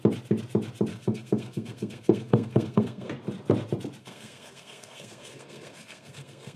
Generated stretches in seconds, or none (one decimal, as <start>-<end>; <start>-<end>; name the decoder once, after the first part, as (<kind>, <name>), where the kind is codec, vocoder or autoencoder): 0.9-3.1 (codec, SNAC); 4.0-6.6